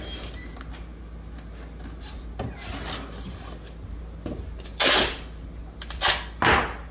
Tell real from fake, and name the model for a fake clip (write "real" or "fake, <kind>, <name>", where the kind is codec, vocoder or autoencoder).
real